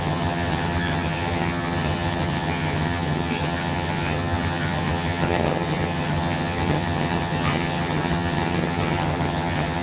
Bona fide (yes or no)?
no